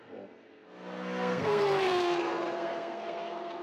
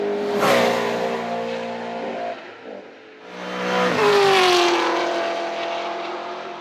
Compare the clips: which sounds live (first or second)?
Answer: second